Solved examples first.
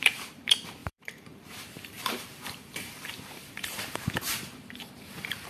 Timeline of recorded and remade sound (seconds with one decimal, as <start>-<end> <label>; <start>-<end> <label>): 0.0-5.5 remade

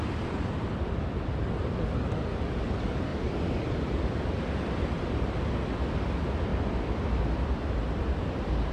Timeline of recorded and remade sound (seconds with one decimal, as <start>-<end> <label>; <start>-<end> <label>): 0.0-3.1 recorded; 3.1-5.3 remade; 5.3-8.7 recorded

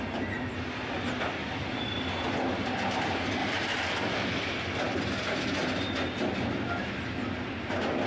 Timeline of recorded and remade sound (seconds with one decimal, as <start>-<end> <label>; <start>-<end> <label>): 0.0-3.4 recorded; 3.4-4.5 remade; 4.5-8.1 recorded

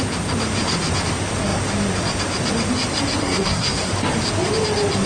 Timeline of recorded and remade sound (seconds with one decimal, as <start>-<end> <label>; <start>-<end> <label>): 0.0-3.2 recorded; 3.2-3.9 remade; 3.9-5.1 recorded